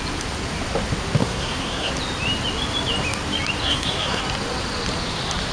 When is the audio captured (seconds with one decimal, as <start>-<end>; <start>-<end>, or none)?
0.0-1.2; 1.9-3.6; 4.2-5.5